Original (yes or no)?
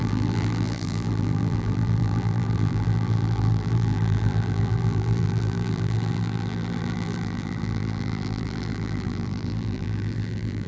no